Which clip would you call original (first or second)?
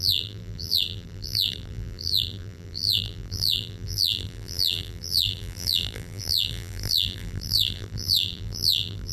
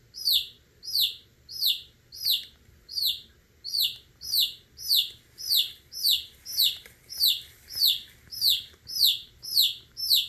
second